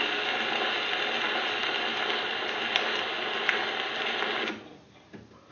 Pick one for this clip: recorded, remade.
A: recorded